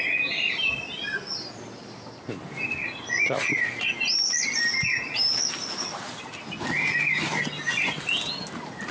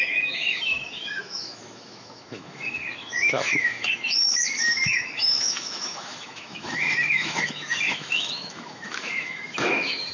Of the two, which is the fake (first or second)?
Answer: second